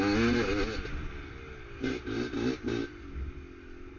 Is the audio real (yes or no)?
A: yes